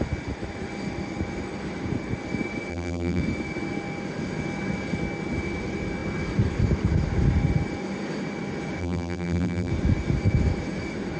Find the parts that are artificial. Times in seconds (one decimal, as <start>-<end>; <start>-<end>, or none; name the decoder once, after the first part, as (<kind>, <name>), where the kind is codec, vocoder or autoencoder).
2.7-3.2 (vocoder, BigVGAN v2); 8.8-9.7